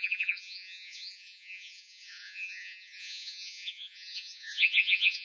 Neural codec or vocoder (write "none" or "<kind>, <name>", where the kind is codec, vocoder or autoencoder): vocoder, Vocos